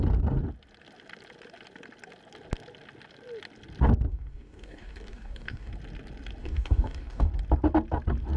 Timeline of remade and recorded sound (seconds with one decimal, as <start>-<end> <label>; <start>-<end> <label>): 0.0-4.1 recorded; 4.1-5.7 remade; 5.7-6.4 recorded; 6.4-7.3 remade; 7.3-8.4 recorded